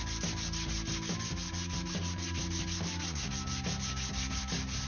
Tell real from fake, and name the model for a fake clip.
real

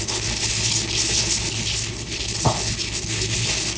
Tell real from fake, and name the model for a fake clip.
fake, codec, HILCodec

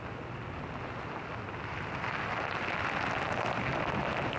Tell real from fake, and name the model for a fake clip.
real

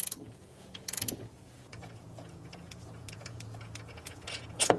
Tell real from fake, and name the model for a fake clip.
fake, vocoder, Vocos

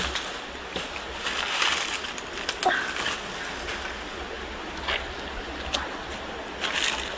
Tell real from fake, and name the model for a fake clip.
real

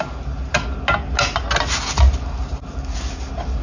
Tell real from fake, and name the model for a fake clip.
real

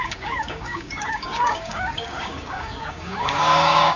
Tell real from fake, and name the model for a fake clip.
fake, codec, DAC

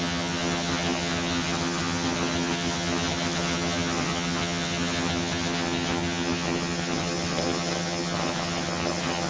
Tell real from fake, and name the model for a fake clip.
fake, vocoder, HiFi-GAN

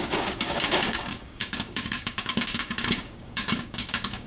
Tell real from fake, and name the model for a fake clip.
fake, codec, DAC